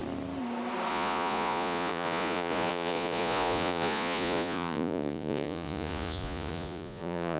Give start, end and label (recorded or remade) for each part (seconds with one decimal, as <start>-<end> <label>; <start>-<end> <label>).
0.0-0.9 recorded; 0.9-7.4 remade